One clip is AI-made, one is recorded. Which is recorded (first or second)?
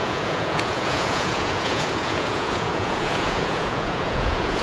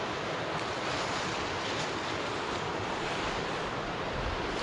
second